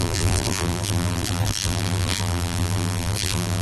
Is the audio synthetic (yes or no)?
yes